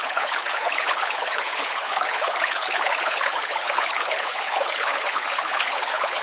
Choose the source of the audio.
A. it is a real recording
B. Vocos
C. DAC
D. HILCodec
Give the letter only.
D